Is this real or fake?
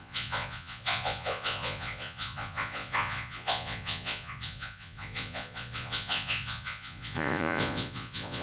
fake